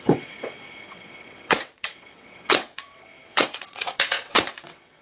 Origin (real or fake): fake